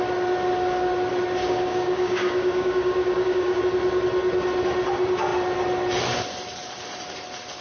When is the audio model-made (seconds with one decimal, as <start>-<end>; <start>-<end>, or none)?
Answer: 1.4-3.6